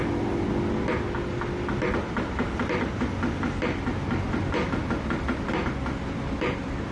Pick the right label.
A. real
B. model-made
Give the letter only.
A